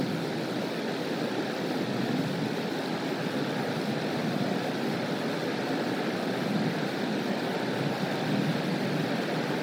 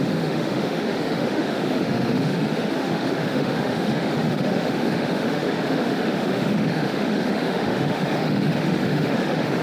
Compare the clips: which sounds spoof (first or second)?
second